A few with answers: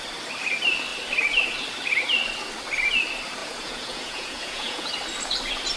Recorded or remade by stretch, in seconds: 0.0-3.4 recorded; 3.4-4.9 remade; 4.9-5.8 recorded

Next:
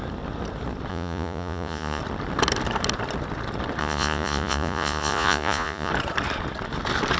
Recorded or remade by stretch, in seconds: 0.0-0.9 recorded; 0.9-2.0 remade; 2.0-3.8 recorded; 3.8-5.9 remade; 5.9-7.2 recorded

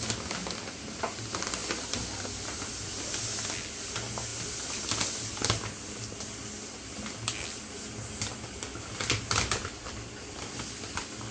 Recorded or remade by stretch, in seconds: 0.0-11.3 recorded

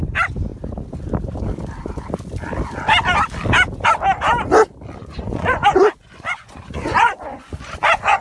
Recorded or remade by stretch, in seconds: 0.0-5.0 recorded; 5.0-8.2 remade

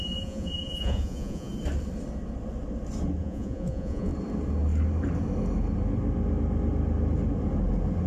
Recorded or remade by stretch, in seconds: 0.0-1.5 remade; 1.5-3.2 recorded; 3.2-4.1 remade; 4.1-8.1 recorded

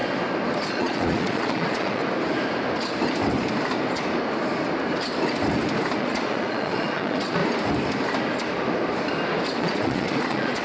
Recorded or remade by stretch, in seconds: 0.0-0.7 recorded; 0.7-2.0 remade; 2.0-6.0 recorded; 6.0-7.4 remade; 7.4-9.6 recorded; 9.6-10.6 remade